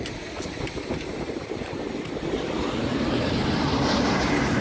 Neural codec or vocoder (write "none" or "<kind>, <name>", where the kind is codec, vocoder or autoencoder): vocoder, BigVGAN v2